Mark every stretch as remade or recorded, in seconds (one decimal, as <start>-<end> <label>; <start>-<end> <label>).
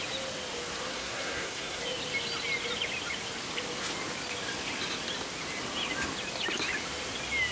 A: 0.0-0.9 recorded; 0.9-1.8 remade; 1.8-7.5 recorded